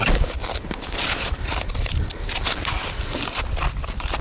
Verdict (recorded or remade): recorded